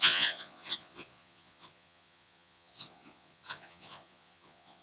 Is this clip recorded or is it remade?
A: remade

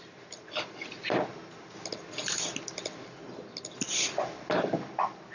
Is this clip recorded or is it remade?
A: recorded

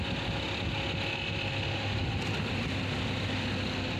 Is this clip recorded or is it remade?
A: recorded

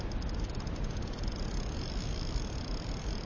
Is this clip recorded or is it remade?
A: recorded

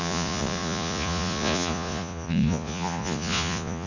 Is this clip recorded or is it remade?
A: remade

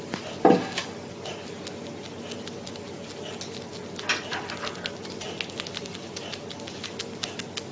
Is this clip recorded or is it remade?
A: recorded